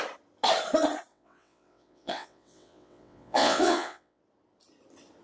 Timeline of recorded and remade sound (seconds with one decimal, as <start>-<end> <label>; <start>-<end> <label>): 0.0-1.1 recorded; 1.1-4.2 remade; 4.2-5.2 recorded